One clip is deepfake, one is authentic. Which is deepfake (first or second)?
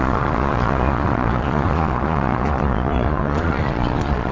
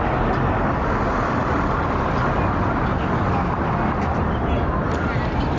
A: first